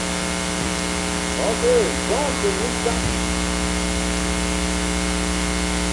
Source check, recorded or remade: recorded